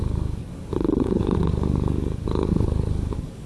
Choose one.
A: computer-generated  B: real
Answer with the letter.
A